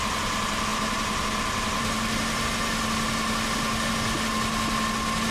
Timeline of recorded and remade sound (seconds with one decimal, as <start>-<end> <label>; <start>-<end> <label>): 0.0-5.3 recorded